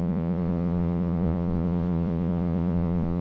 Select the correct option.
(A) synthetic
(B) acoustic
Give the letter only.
A